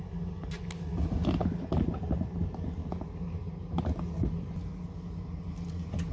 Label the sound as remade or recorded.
recorded